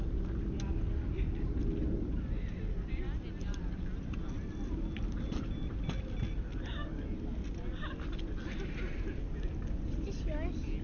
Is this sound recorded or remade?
recorded